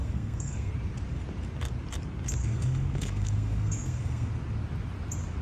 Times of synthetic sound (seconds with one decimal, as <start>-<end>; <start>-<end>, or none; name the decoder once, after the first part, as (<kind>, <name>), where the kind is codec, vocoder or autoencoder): 0.0-0.7 (codec, SNAC); 2.4-4.3